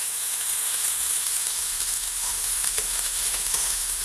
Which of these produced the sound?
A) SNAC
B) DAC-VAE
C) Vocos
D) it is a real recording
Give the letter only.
B